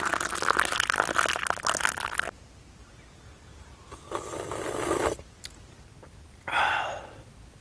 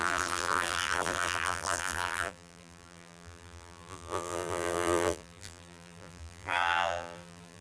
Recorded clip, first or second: first